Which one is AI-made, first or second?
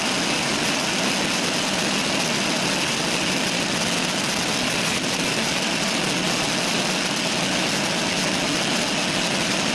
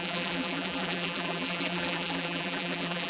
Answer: second